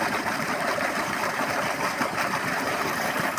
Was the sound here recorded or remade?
remade